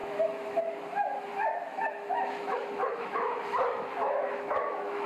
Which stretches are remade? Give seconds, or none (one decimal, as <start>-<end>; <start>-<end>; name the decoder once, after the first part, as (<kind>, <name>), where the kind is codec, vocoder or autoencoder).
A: 0.0-0.6 (autoencoder, DAC-VAE); 1.7-5.1